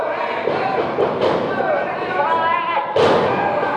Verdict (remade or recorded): recorded